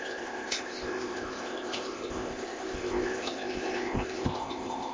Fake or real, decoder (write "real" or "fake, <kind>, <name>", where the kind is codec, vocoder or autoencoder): fake, codec, ZipCodec